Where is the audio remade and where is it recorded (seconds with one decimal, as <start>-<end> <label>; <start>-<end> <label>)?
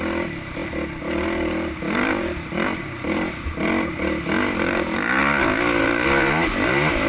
0.0-7.1 recorded